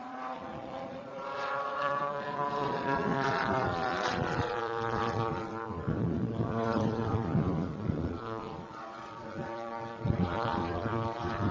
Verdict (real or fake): fake